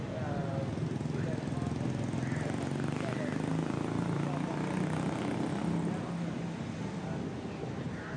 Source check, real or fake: real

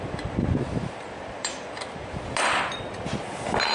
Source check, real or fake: real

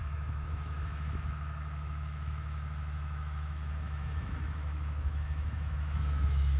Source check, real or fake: fake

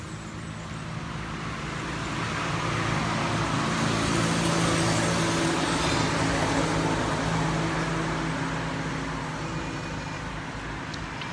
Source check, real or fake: real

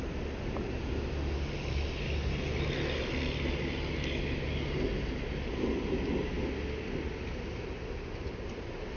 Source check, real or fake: real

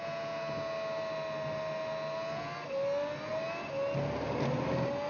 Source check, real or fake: real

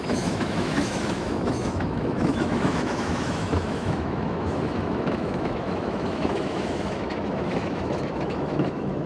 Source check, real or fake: fake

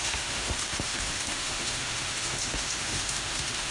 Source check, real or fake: fake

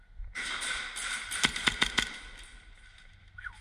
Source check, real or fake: real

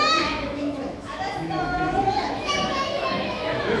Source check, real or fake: fake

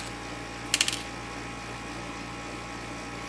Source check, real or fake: real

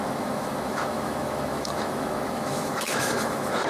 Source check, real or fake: fake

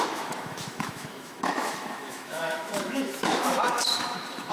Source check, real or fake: fake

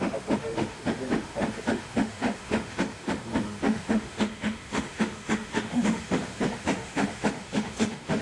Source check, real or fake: fake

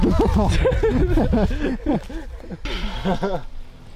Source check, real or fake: real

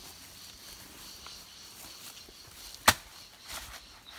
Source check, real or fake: real